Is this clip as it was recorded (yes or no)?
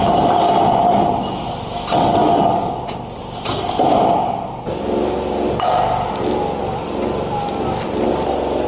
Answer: yes